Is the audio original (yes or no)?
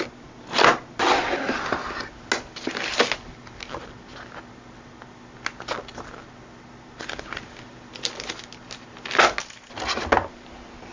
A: yes